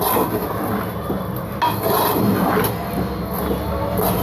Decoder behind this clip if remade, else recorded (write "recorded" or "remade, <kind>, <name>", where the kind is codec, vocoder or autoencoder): recorded